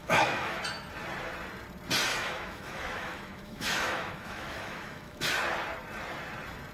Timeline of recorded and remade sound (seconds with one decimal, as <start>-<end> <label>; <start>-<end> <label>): 0.0-0.6 remade; 0.6-2.1 recorded; 2.1-5.2 remade; 5.2-6.7 recorded